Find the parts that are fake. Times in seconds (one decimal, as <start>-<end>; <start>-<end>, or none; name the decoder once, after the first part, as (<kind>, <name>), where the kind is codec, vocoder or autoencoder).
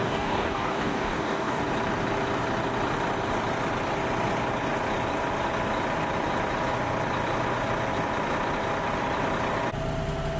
0.0-1.6 (codec, DAC)